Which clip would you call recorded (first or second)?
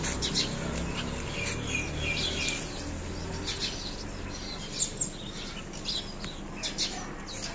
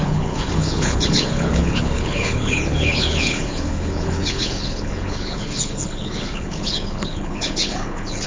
first